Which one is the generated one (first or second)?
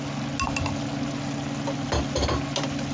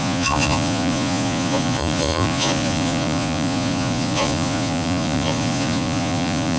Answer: second